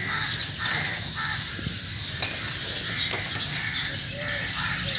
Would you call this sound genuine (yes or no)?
yes